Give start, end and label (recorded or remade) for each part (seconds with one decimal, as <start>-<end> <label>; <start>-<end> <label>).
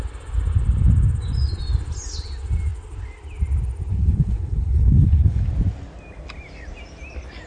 0.0-3.9 recorded; 3.9-5.5 remade; 5.5-7.5 recorded